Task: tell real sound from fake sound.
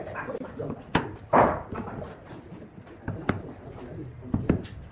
real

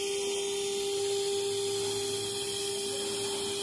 real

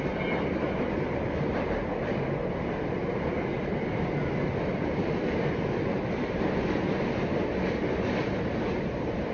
real